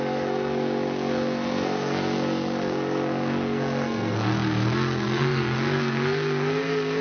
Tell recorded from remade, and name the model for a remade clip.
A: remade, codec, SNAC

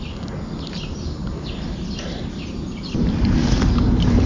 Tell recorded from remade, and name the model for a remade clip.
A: recorded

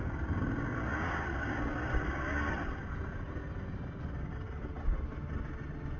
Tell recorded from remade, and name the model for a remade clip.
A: recorded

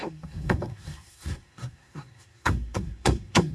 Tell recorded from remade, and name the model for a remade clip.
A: remade, codec, SNAC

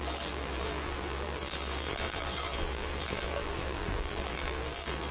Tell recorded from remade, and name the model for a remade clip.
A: remade, vocoder, BigVGAN v2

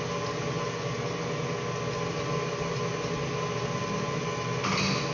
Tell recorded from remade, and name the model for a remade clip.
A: recorded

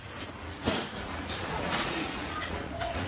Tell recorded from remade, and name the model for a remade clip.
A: remade, vocoder, Vocos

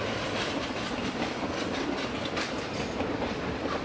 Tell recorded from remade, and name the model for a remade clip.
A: recorded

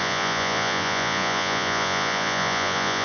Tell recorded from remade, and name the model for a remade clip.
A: remade, vocoder, Vocos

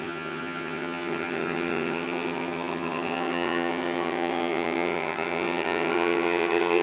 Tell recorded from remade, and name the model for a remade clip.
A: remade, vocoder, HiFi-GAN